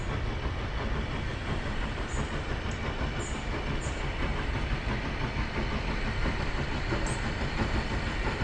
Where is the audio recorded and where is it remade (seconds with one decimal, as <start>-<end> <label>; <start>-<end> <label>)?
0.0-1.3 recorded; 1.3-2.5 remade; 2.5-4.3 recorded; 4.3-4.9 remade; 4.9-8.4 recorded

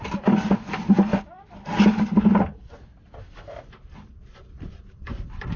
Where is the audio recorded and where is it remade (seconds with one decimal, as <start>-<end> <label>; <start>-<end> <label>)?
0.0-1.1 remade; 1.1-2.3 recorded; 2.3-5.6 remade

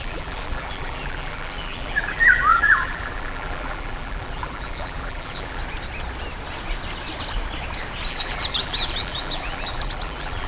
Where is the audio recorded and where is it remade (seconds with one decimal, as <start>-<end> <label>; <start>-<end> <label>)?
0.0-5.6 remade; 5.6-8.1 recorded; 8.1-10.5 remade

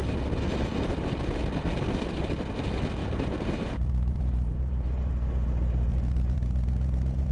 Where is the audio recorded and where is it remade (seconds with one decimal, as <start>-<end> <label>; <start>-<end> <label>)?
0.0-3.0 recorded; 3.0-5.1 remade; 5.1-5.9 recorded; 5.9-7.3 remade

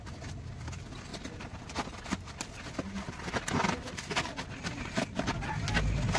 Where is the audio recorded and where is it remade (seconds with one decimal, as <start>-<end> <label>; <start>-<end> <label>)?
0.0-6.2 recorded

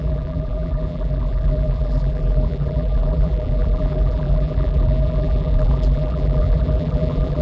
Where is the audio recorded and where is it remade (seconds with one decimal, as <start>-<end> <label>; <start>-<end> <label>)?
0.0-7.4 remade

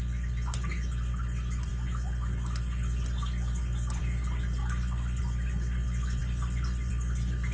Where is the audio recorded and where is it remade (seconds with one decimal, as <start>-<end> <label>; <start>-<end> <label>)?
0.0-1.7 remade; 1.7-4.0 recorded; 4.0-4.6 remade; 4.6-5.2 recorded; 5.2-7.5 remade